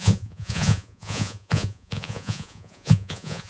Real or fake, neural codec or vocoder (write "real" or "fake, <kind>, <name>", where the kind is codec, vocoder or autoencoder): fake, vocoder, Vocos